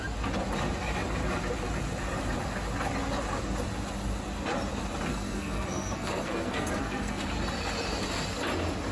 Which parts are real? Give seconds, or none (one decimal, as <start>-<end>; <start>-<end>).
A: 0.0-5.1; 7.3-8.9